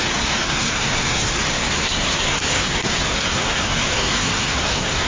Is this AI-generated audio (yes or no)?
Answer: yes